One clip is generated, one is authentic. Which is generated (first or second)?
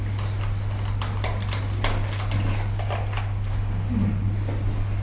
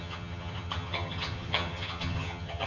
second